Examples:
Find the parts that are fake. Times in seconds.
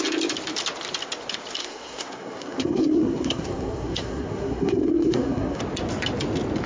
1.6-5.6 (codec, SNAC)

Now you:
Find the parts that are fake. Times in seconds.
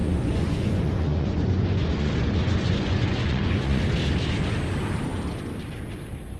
0.0-3.8 (vocoder, Vocos)